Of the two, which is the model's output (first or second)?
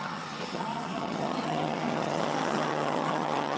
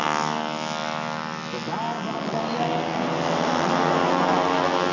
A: first